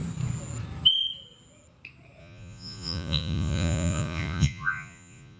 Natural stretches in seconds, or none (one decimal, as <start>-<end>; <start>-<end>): 0.0-2.2